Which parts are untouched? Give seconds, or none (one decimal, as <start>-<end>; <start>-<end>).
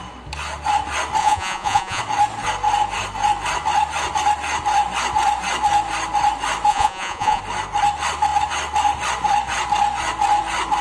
0.0-1.2; 2.0-6.7; 7.4-10.8